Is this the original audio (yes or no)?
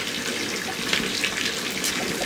yes